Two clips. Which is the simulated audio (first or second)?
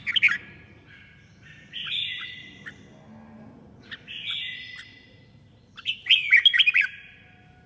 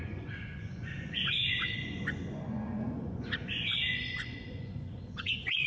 second